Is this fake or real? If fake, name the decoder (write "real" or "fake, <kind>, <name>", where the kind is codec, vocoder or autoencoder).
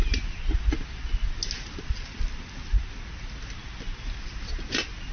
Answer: real